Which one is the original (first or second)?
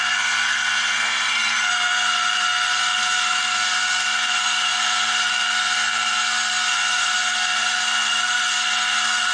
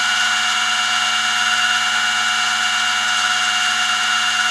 second